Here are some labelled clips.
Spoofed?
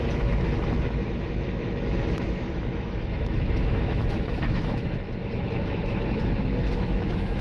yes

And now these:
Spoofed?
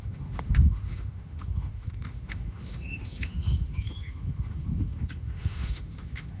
yes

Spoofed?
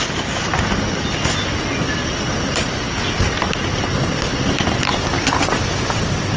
no